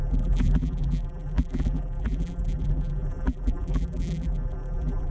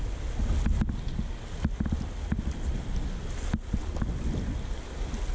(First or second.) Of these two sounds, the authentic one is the second